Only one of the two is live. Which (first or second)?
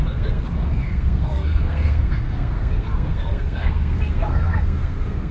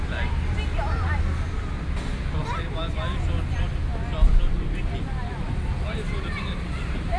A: second